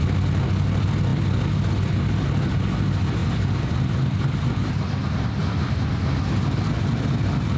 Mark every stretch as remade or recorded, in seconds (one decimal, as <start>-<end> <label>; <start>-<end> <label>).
0.0-5.4 recorded; 5.4-5.9 remade; 5.9-7.6 recorded